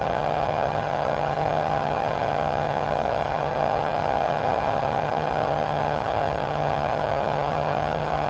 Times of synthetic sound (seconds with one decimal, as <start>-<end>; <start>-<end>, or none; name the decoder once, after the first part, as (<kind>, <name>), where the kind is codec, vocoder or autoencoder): 0.0-8.3 (vocoder, HiFi-GAN)